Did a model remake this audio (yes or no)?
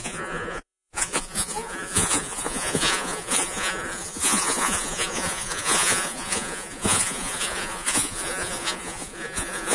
yes